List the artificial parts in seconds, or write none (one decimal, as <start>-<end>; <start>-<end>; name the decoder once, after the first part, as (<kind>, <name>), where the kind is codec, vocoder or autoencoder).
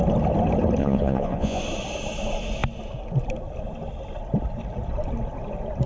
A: 0.8-1.6 (vocoder, Vocos)